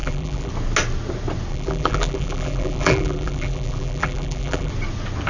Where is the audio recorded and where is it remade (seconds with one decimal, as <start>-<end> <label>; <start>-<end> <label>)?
0.0-0.5 remade; 0.5-1.5 recorded; 1.5-4.7 remade; 4.7-5.3 recorded